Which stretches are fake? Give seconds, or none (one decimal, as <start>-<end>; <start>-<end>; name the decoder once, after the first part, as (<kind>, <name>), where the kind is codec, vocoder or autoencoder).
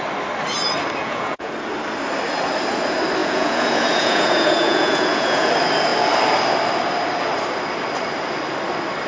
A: 1.0-1.5 (vocoder, Vocos); 3.2-5.5